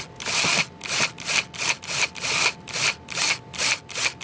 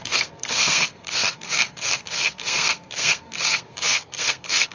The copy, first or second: second